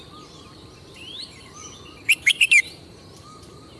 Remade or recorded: remade